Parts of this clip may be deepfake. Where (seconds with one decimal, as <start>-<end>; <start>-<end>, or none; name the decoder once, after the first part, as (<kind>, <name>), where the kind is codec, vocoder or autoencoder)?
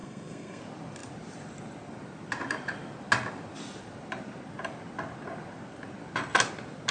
0.0-0.6 (codec, SNAC)